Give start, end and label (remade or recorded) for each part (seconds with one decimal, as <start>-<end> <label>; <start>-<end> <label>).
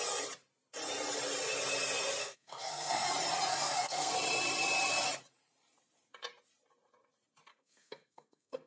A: 0.0-2.2 recorded; 2.2-3.1 remade; 3.1-3.5 recorded; 3.5-4.1 remade; 4.1-7.5 recorded; 7.5-8.7 remade